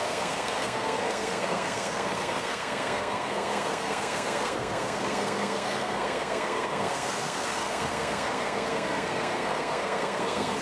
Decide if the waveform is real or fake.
fake